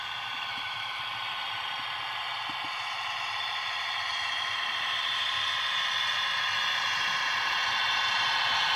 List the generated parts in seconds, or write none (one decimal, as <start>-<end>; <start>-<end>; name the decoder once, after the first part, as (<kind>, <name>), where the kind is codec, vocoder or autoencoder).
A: 0.5-1.0 (autoencoder, DAC-VAE)